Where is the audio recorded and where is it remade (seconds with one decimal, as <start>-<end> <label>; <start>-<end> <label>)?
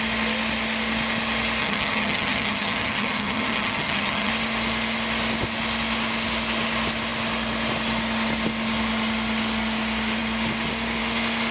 0.0-1.6 recorded; 1.6-4.3 remade; 4.3-11.5 recorded